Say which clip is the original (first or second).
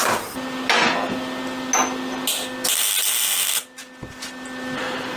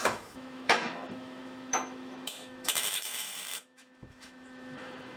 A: first